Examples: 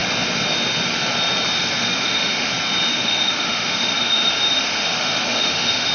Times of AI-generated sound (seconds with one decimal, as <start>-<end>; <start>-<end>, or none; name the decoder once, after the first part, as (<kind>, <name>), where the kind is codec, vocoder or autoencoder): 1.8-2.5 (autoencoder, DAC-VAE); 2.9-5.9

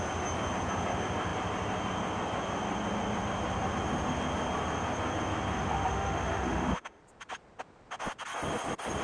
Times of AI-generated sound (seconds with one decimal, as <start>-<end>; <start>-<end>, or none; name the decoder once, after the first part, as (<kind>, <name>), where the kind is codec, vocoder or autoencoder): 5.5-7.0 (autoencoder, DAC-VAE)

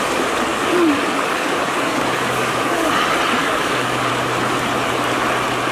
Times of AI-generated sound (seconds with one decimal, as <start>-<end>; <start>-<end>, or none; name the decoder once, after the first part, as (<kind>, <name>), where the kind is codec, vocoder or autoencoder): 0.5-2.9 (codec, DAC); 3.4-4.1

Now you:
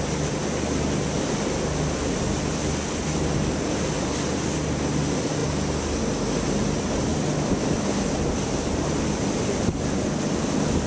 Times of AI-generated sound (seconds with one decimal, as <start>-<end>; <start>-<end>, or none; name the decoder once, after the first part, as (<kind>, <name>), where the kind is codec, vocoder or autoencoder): none